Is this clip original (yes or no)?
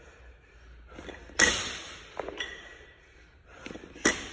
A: yes